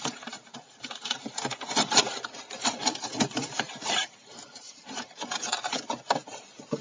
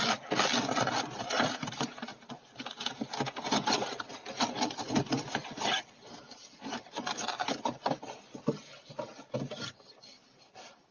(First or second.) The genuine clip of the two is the second